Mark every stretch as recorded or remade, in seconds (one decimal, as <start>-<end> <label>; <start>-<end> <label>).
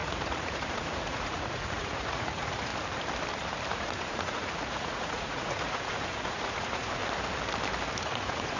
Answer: 0.0-2.7 remade; 2.7-3.7 recorded; 3.7-7.0 remade; 7.0-8.0 recorded; 8.0-8.6 remade